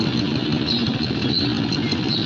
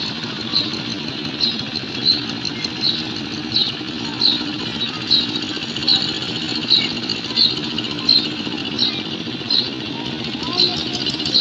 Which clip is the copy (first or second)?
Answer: first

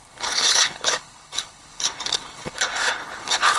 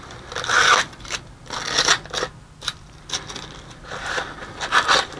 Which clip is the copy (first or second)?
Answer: first